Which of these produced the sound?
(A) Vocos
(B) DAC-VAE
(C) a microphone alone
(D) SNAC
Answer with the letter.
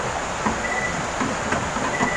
C